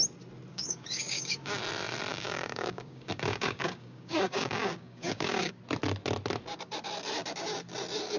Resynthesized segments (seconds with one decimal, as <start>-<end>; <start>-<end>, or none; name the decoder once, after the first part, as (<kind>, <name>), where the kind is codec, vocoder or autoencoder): 0.5-1.6 (codec, DAC); 2.1-5.6